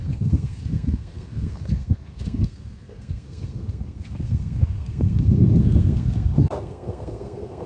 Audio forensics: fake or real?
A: fake